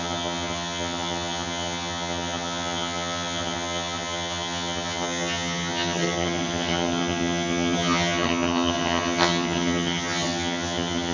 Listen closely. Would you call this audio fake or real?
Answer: fake